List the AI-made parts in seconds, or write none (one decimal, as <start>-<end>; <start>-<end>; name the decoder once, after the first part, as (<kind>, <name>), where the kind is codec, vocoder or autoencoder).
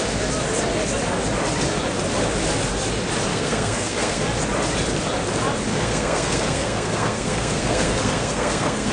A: 3.3-4.2 (codec, SNAC); 5.7-8.9